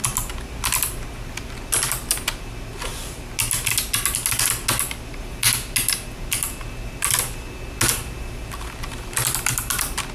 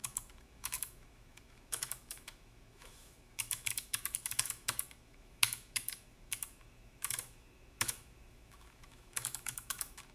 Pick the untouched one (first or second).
first